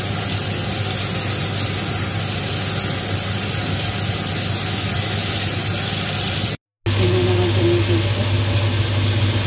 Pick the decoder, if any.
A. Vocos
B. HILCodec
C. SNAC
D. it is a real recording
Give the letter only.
D